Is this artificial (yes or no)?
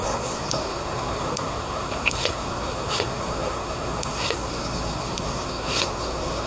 yes